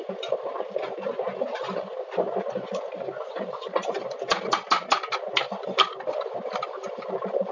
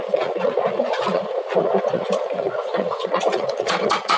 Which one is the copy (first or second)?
second